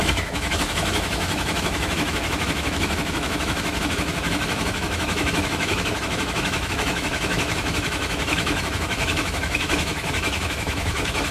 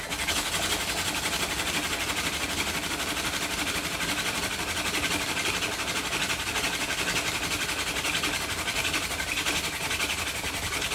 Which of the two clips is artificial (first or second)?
first